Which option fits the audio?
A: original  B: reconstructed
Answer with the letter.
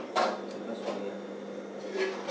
A